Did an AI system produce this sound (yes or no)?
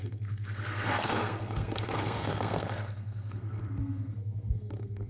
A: yes